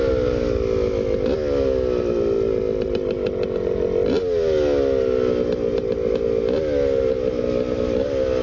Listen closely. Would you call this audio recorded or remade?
recorded